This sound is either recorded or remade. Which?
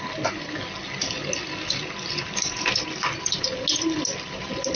recorded